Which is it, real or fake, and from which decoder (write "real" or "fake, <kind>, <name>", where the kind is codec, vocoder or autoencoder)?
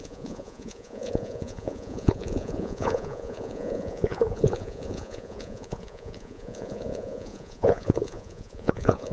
fake, vocoder, Vocos